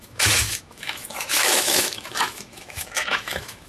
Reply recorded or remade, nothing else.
remade